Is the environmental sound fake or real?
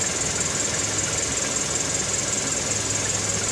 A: real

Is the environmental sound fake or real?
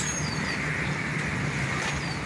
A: real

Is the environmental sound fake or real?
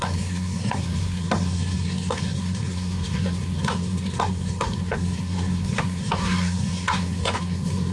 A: fake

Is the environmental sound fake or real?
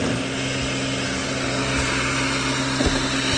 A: real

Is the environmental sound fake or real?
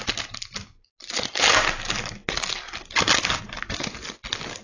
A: real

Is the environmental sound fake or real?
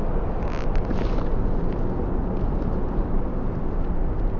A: real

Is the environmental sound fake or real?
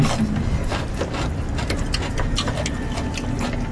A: real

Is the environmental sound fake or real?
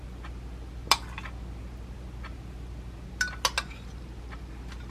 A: real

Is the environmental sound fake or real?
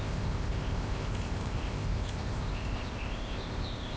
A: fake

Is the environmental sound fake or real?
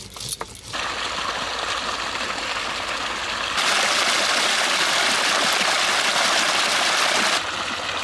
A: real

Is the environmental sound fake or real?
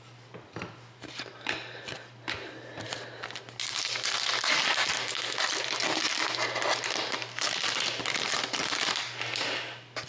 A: real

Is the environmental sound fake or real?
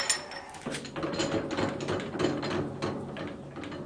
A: real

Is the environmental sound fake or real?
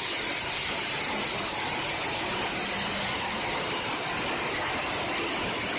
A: real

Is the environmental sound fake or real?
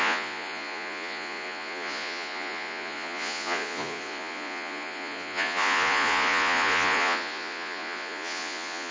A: fake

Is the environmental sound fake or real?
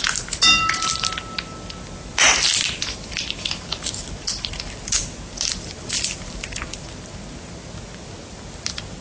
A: real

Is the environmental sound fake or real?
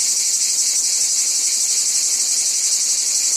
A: real